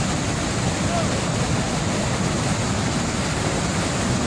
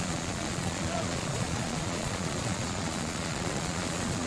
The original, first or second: first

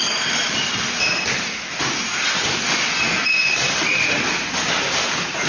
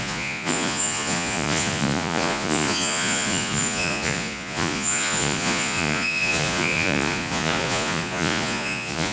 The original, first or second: first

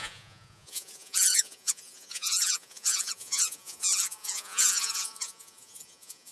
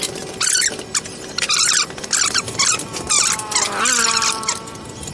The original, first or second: second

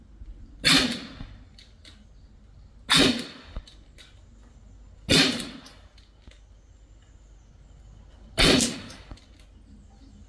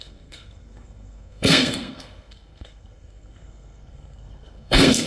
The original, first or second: first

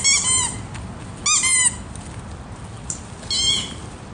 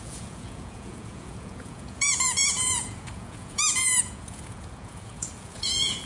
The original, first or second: first